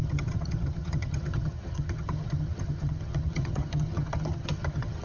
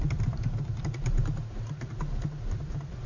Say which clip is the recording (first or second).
second